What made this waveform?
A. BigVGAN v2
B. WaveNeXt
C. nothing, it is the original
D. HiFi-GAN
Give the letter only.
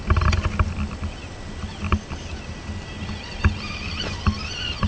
C